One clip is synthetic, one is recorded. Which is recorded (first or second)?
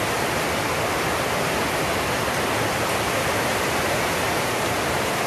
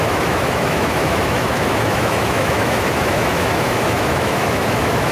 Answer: first